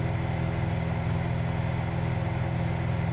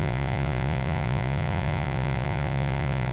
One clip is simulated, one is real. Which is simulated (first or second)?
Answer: second